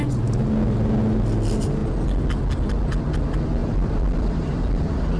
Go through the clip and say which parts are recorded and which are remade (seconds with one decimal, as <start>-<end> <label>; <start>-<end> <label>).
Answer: 0.0-3.6 recorded; 3.6-4.7 remade; 4.7-5.2 recorded